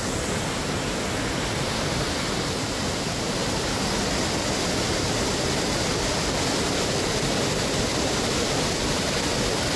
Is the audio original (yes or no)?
yes